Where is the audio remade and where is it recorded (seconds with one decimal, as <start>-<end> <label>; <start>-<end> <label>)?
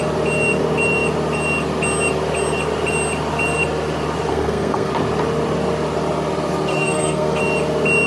0.0-4.3 recorded; 4.3-4.9 remade; 4.9-6.7 recorded; 6.7-7.4 remade; 7.4-8.1 recorded